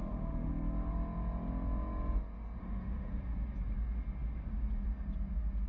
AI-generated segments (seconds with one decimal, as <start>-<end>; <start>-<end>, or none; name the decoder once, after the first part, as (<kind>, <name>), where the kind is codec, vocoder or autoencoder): 0.0-0.5 (autoencoder, DAC-VAE); 2.6-3.2